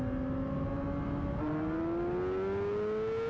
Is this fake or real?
real